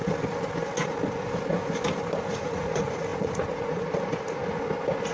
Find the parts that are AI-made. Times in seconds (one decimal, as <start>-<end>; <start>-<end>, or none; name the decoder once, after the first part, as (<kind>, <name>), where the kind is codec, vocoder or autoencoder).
2.3-4.4 (vocoder, Vocos)